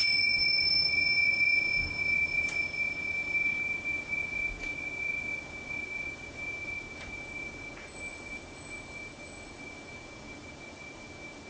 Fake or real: fake